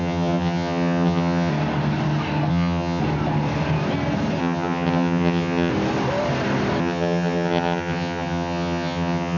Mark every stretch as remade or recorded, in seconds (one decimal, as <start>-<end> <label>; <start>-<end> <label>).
0.0-1.5 remade; 1.5-2.5 recorded; 2.5-3.0 remade; 3.0-4.4 recorded; 4.4-5.7 remade; 5.7-6.8 recorded; 6.8-9.4 remade